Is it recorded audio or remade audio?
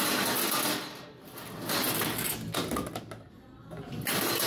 recorded